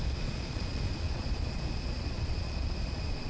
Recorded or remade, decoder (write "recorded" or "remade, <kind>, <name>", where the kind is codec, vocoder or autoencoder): remade, vocoder, Vocos